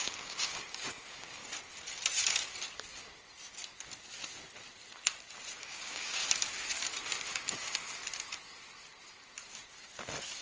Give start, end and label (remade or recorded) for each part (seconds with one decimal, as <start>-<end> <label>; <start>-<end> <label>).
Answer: 0.0-1.4 remade; 1.4-5.6 recorded; 5.6-6.2 remade; 6.2-7.3 recorded; 7.3-8.0 remade; 8.0-10.4 recorded